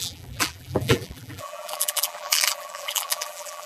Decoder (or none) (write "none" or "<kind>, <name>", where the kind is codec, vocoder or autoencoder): vocoder, BigVGAN v2